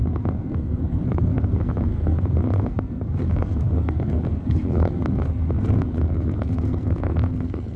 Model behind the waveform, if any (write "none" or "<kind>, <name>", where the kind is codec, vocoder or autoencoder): codec, SNAC